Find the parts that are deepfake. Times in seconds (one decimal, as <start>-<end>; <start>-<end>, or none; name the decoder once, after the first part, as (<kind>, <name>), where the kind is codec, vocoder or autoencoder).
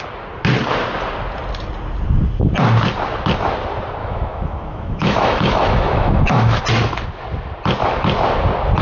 4.0-6.6 (autoencoder, DAC-VAE)